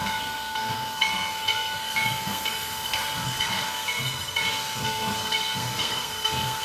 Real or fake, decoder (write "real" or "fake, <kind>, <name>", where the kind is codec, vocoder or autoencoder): fake, codec, SNAC